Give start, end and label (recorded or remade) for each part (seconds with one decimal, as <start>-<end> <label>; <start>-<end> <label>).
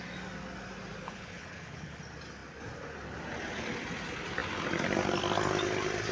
0.0-1.0 recorded; 1.0-2.0 remade; 2.0-6.1 recorded